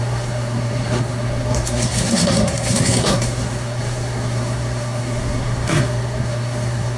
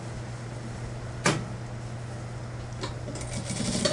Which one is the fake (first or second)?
first